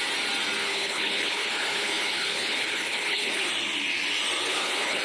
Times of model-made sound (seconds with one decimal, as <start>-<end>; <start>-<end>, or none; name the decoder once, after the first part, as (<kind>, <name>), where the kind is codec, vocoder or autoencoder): 0.6-3.5 (codec, HILCodec); 4.5-5.0